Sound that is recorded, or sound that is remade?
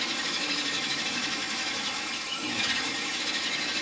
remade